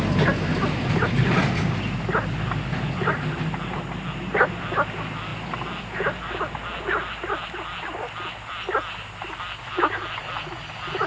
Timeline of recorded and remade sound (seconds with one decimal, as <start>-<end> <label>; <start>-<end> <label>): 0.0-11.1 recorded